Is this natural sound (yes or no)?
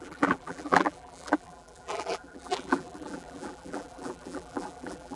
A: no